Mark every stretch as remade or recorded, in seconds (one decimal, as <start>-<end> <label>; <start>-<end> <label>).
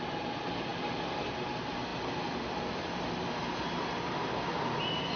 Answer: 0.0-5.2 recorded